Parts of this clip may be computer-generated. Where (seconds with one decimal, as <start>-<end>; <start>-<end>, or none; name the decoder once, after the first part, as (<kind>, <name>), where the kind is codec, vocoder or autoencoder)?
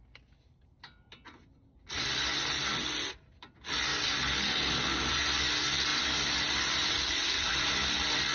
none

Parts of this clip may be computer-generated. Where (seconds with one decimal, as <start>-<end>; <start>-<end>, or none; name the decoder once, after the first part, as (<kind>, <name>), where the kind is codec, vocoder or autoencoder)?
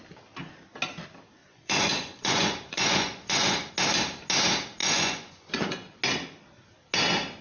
1.4-3.7 (vocoder, Vocos); 4.8-6.0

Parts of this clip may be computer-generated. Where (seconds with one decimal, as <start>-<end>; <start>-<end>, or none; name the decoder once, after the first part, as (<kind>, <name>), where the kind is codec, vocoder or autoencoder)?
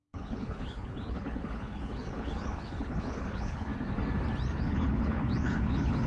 0.0-3.7 (codec, HILCodec); 4.6-6.1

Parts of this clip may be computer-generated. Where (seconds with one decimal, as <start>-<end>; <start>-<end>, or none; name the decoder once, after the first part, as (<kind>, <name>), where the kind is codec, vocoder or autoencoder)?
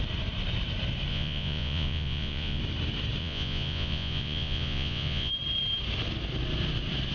1.1-2.6 (vocoder, Vocos); 3.2-5.3